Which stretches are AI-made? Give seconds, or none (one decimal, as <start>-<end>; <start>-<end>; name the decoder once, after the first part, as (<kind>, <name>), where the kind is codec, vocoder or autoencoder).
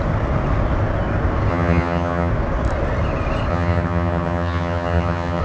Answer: 1.5-2.3 (vocoder, HiFi-GAN); 3.5-5.4